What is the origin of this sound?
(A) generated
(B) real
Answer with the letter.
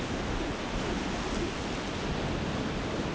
B